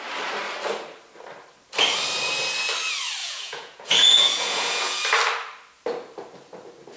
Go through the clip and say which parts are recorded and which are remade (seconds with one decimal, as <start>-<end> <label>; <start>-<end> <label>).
0.0-3.2 recorded; 3.2-5.0 remade; 5.0-7.0 recorded